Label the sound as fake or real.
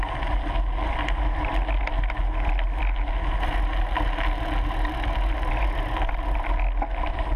real